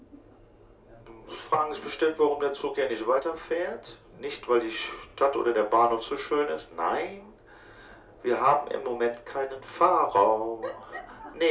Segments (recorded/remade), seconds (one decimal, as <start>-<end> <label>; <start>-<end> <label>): 0.0-2.6 recorded; 2.6-3.2 remade; 3.2-11.5 recorded